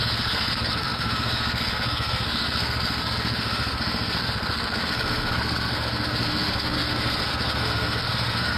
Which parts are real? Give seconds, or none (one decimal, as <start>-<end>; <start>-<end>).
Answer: none